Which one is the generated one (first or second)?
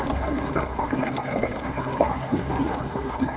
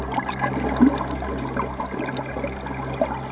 first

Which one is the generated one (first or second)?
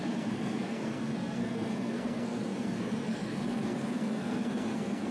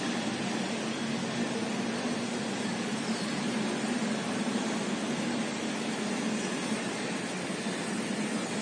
first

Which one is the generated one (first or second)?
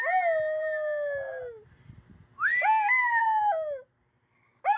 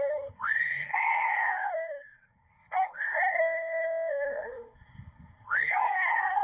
second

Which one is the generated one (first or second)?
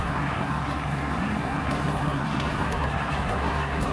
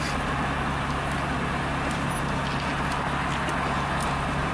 first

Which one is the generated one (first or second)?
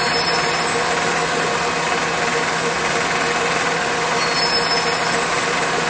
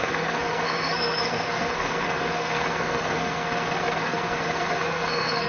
second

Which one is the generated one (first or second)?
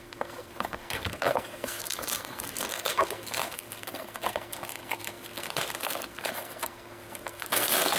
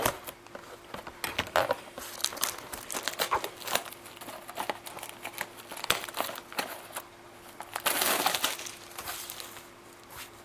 first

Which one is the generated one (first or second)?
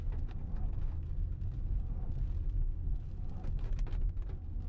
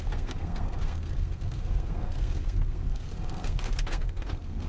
second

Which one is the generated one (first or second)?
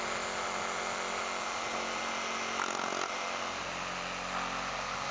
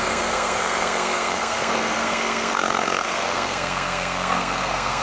second